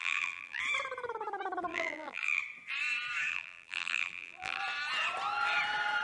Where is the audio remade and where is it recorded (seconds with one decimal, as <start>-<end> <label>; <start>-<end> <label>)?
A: 0.0-0.6 remade; 0.6-1.7 recorded; 1.7-2.4 remade; 2.4-3.3 recorded; 3.3-4.6 remade; 4.6-6.0 recorded